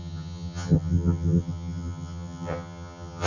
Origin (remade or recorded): remade